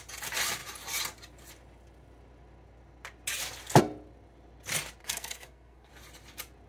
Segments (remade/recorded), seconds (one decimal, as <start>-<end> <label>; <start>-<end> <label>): 0.0-5.0 recorded; 5.0-5.9 remade; 5.9-6.7 recorded